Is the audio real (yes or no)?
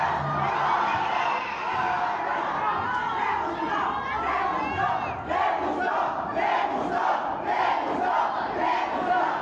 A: yes